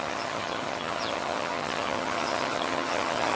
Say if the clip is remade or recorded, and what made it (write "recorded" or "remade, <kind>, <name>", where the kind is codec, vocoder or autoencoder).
remade, vocoder, HiFi-GAN